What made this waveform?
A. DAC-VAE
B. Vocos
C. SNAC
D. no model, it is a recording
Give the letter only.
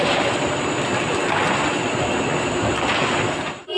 D